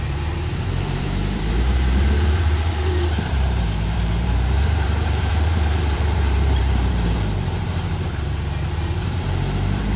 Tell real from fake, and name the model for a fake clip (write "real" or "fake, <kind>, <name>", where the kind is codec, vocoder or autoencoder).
fake, vocoder, BigVGAN v2